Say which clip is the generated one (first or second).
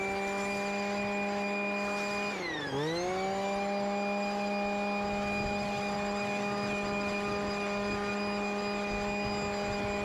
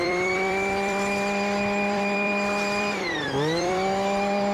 second